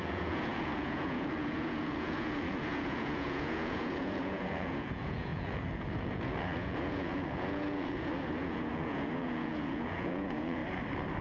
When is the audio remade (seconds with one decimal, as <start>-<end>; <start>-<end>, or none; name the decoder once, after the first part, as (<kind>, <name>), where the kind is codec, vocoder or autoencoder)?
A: 0.0-10.6 (vocoder, Vocos)